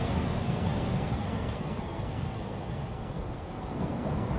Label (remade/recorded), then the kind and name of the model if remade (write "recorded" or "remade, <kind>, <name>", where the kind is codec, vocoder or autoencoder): remade, codec, SNAC